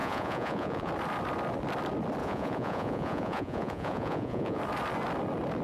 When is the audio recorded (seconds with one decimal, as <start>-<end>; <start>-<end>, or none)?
0.9-2.2; 4.6-5.6